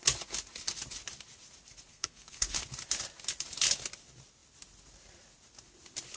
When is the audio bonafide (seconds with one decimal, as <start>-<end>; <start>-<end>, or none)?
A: 0.0-1.9; 2.6-6.2